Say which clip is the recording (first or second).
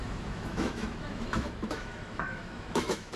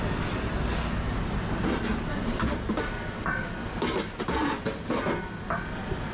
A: second